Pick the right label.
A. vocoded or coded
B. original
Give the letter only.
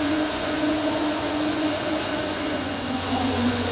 A